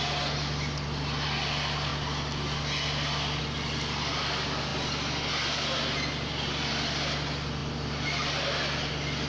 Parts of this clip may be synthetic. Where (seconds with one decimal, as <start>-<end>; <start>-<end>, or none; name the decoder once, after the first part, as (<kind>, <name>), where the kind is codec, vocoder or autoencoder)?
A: none